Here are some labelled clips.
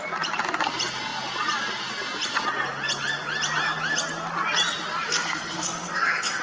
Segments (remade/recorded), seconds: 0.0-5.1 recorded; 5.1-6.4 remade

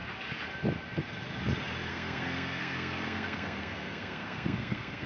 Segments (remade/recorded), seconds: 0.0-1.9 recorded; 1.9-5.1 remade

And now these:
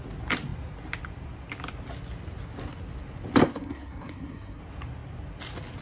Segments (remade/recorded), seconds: 0.0-3.4 recorded; 3.4-4.6 remade; 4.6-5.8 recorded

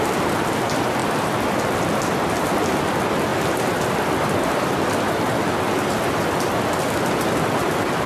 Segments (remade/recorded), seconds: 0.0-8.1 recorded